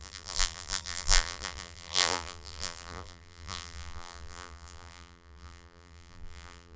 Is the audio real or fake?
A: fake